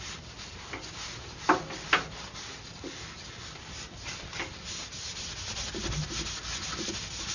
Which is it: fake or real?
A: real